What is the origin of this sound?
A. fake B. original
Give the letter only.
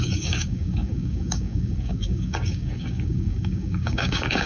A